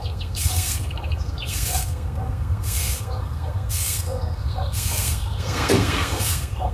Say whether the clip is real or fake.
fake